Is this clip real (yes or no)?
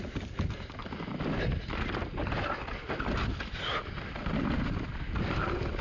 yes